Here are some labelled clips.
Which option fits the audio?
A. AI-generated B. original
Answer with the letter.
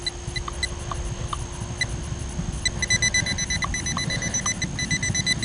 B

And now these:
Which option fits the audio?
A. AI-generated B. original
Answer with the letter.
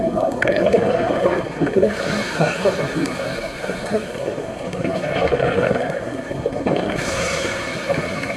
A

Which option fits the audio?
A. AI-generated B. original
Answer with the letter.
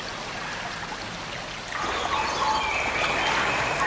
B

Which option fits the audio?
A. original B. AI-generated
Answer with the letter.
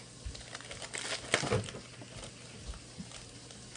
A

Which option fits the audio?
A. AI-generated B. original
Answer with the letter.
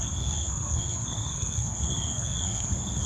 A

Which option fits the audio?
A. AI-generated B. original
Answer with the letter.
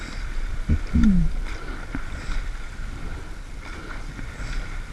B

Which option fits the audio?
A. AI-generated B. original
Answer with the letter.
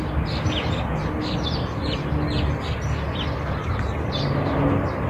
B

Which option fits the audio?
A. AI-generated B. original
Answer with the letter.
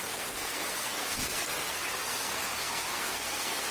A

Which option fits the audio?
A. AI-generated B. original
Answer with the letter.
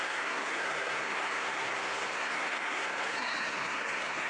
A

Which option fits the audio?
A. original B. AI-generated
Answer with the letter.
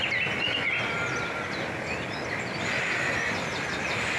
A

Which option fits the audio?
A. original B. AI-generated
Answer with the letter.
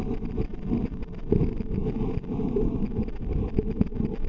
A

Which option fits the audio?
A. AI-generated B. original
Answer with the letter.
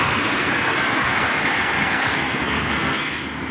A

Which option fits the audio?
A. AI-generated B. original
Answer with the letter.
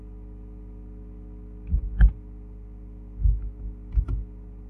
B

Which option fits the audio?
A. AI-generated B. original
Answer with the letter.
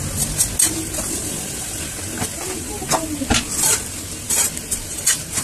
B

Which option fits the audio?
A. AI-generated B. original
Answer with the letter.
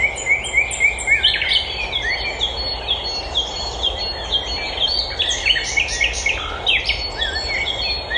B